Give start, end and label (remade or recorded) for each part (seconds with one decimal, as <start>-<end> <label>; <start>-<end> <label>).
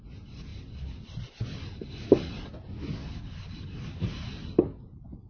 0.0-5.3 recorded